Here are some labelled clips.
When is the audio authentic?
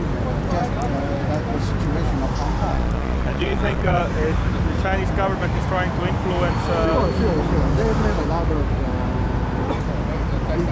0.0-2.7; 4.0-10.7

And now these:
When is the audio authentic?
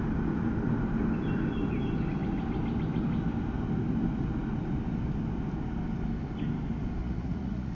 0.0-7.0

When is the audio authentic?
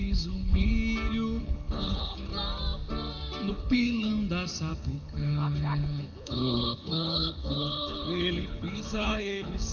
0.7-1.4; 2.3-3.5; 4.1-4.7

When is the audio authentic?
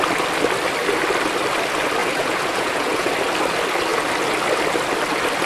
0.0-2.0; 3.1-5.5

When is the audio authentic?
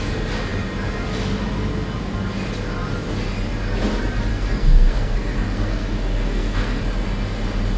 0.0-4.3; 6.8-7.8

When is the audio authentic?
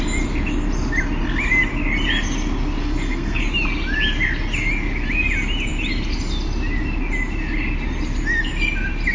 0.0-2.8; 3.4-9.1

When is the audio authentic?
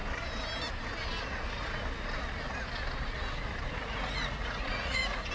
0.0-3.8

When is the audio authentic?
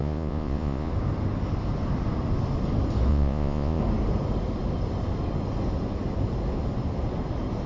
0.9-3.1; 3.8-7.7